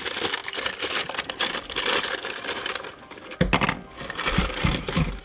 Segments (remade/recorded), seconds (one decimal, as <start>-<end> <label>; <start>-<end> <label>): 0.0-4.4 recorded; 4.4-5.2 remade